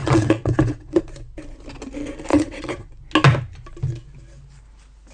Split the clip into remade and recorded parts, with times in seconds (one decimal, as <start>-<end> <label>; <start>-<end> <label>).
0.0-1.0 remade; 1.0-2.3 recorded; 2.3-2.9 remade; 2.9-5.1 recorded